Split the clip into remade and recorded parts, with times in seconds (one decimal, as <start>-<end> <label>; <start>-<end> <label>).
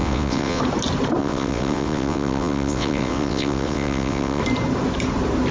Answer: 0.0-0.6 remade; 0.6-1.2 recorded; 1.2-4.4 remade; 4.4-5.5 recorded